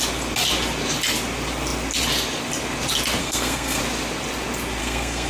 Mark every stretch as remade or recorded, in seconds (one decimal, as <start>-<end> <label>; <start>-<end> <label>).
0.0-3.2 recorded; 3.2-3.8 remade; 3.8-4.8 recorded; 4.8-5.3 remade